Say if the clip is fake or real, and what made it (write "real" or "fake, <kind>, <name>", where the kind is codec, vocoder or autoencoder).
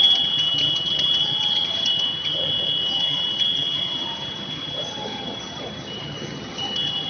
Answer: fake, vocoder, HiFi-GAN